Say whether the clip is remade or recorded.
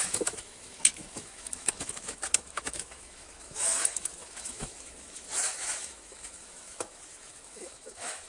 remade